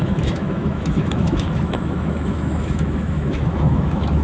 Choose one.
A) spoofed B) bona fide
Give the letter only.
A